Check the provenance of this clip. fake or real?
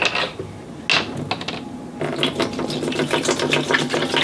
real